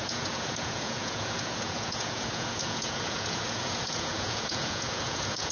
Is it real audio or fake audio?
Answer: fake